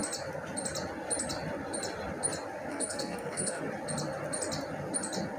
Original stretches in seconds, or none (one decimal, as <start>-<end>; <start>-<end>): 0.0-2.7; 3.6-5.4